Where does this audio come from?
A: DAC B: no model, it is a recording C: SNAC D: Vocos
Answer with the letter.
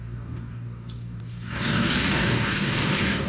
A